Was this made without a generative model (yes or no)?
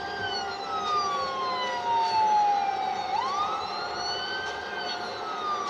yes